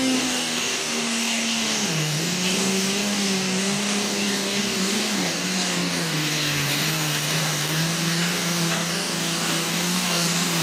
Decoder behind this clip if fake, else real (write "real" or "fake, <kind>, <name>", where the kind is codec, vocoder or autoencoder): fake, codec, DAC